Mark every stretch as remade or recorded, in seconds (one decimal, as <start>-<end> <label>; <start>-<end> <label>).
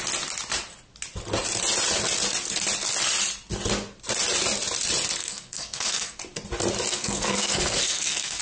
0.0-5.2 recorded; 5.2-6.2 remade; 6.2-6.9 recorded; 6.9-8.4 remade